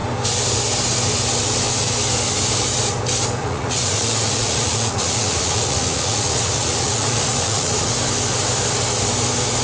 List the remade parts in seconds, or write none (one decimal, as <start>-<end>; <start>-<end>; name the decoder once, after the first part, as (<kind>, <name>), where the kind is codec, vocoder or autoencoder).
3.4-7.9 (vocoder, Vocos)